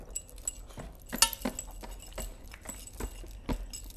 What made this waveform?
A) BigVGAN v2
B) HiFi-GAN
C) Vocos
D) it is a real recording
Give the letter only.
D